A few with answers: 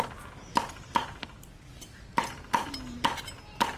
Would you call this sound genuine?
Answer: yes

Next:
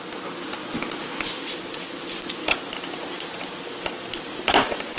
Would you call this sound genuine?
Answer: yes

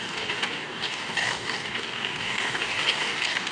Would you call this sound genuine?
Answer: no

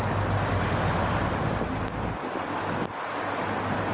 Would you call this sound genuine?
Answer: yes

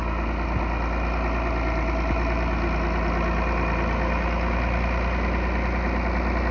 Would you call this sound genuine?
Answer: yes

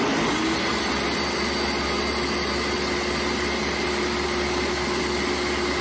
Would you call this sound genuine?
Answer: yes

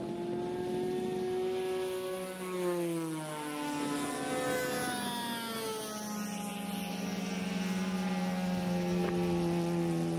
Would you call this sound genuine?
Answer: yes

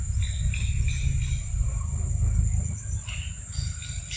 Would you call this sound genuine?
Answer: yes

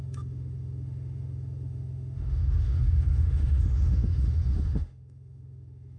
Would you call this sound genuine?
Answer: no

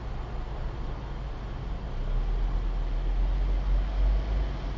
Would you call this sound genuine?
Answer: yes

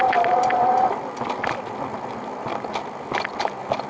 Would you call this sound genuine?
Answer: yes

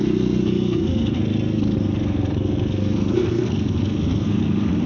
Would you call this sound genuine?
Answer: no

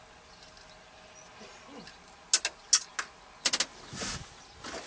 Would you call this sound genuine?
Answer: yes